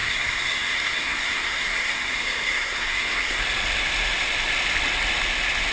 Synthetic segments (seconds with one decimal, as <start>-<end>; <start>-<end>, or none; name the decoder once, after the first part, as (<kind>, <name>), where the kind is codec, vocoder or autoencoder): 0.0-3.4 (codec, SNAC)